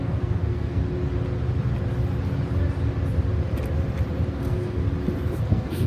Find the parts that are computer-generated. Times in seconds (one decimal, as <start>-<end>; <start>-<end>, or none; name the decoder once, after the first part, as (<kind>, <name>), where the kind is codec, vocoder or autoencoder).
0.0-0.8 (codec, SNAC); 4.3-4.8; 5.4-5.9